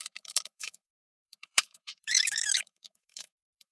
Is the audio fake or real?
fake